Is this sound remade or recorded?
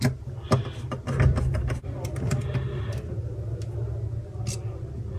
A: recorded